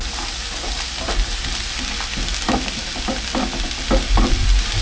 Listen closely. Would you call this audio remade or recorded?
recorded